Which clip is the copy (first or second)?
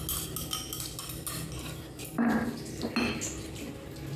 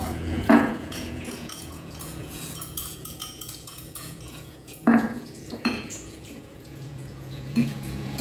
second